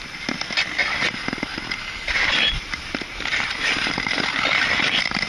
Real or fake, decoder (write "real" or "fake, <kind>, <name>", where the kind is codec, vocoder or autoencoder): real